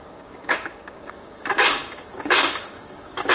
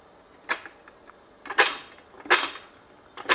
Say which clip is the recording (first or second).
second